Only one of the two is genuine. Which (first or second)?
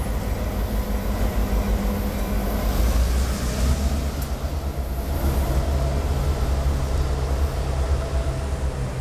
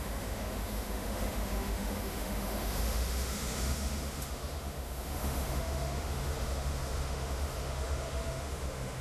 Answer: first